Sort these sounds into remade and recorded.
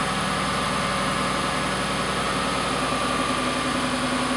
recorded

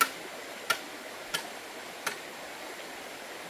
recorded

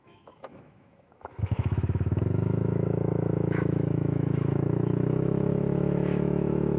remade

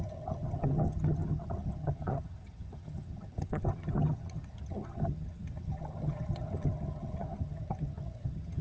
remade